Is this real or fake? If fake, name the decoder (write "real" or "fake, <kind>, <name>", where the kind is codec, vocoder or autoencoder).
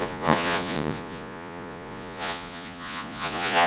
fake, vocoder, Vocos